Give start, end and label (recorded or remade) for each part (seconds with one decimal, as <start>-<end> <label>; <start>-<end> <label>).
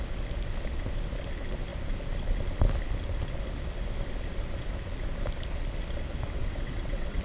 0.0-6.4 recorded; 6.4-7.2 remade